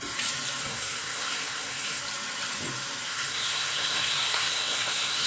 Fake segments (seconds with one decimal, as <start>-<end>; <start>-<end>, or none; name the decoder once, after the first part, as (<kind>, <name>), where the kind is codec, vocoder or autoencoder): 0.6-2.0 (codec, SNAC); 3.1-5.3